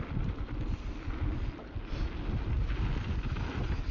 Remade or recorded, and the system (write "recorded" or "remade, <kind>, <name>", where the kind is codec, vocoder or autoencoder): recorded